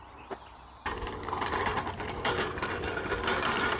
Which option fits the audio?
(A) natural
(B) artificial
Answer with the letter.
A